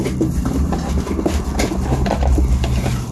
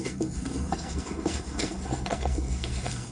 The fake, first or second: second